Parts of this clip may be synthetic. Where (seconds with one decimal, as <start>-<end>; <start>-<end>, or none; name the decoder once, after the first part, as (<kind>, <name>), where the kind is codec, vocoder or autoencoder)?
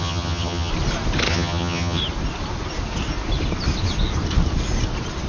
0.0-0.7 (vocoder, HiFi-GAN); 1.3-2.0